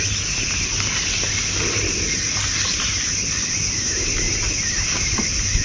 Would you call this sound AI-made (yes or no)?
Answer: no